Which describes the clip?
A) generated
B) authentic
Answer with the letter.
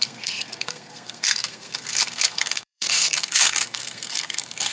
A